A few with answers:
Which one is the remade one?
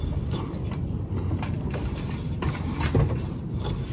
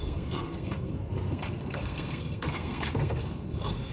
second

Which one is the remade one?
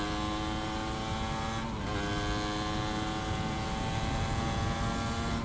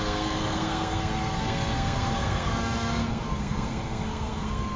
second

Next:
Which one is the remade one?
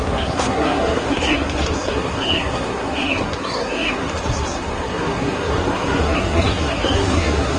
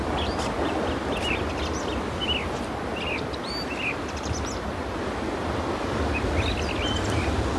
first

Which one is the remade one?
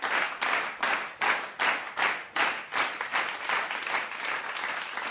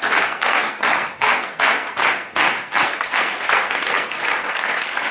second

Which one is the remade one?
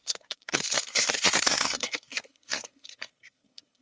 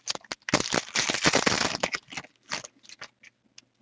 first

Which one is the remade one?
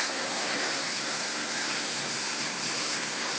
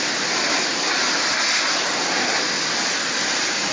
first